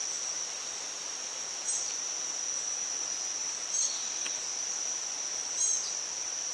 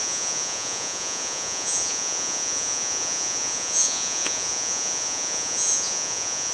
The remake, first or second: second